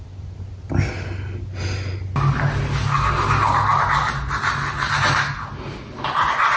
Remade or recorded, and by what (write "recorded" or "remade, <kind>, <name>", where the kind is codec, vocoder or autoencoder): recorded